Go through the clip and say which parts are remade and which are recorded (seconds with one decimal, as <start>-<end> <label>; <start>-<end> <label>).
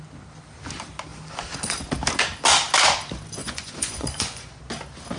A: 0.0-3.4 recorded; 3.4-4.6 remade; 4.6-5.2 recorded